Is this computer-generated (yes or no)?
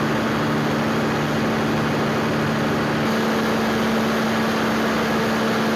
no